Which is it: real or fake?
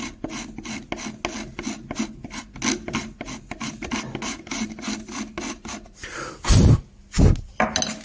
real